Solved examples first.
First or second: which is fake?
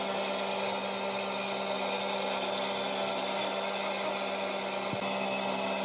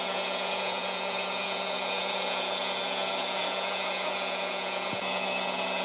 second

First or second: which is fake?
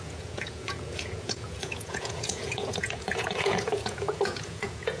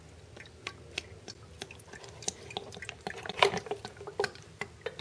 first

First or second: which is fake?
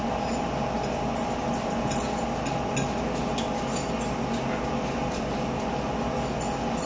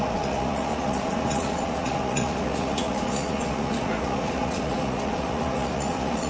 second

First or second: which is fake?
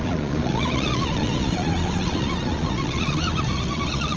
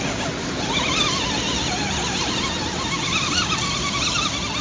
first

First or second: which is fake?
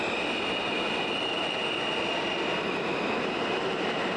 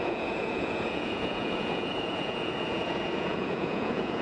second